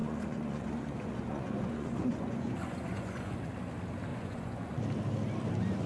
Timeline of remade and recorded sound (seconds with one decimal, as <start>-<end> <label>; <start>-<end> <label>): 0.0-3.5 remade; 3.5-4.1 recorded; 4.1-4.8 remade; 4.8-5.9 recorded